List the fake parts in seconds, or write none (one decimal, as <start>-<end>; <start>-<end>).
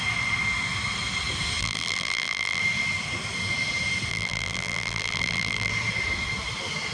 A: 1.6-2.6; 4.1-5.7